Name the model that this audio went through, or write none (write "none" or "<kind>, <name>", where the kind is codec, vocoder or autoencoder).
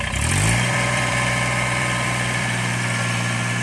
vocoder, BigVGAN v2